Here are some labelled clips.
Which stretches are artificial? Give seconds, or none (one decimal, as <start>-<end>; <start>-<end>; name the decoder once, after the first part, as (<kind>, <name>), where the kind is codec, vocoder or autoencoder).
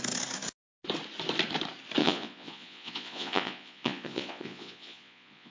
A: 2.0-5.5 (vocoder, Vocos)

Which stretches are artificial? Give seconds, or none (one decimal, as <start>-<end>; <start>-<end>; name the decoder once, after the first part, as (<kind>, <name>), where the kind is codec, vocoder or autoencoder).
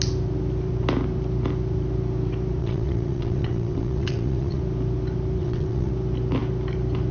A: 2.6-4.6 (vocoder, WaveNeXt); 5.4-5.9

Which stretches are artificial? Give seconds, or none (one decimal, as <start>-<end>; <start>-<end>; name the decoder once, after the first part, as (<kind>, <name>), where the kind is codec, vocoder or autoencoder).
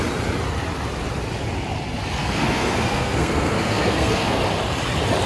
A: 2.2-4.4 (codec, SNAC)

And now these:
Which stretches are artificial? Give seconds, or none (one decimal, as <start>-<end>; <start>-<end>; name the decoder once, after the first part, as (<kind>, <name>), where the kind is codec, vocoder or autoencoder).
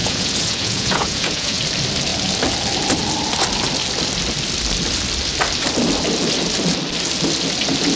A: 0.0-1.6 (vocoder, Vocos)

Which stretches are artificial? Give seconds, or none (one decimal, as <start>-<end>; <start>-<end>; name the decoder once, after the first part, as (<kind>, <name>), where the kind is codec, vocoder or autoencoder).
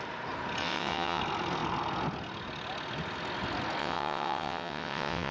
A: 0.6-1.2 (vocoder, WaveNeXt); 3.8-5.3